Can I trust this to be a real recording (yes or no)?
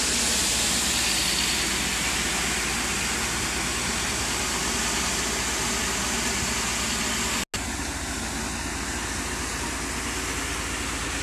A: yes